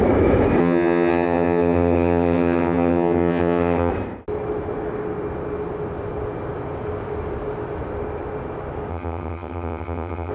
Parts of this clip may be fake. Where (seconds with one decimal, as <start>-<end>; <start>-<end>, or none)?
0.6-3.9; 8.9-10.3